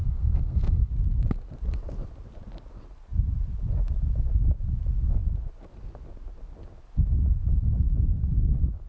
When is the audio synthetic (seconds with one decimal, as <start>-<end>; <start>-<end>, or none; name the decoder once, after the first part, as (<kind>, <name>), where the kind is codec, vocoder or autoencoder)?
0.0-0.9 (codec, SNAC)